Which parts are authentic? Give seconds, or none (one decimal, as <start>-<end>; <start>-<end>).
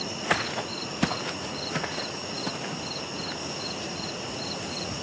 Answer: 2.4-3.6